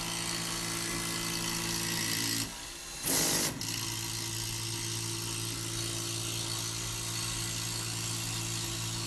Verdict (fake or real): real